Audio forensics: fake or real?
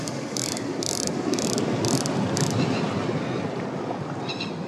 real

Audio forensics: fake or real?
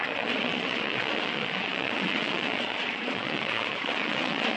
fake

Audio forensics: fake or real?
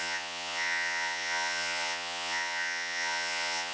fake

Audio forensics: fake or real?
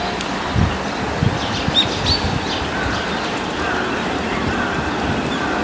real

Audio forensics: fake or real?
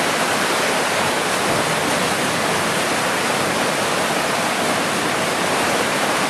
real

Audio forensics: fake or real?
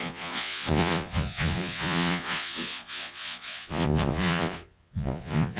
fake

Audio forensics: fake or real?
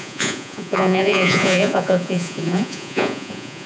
fake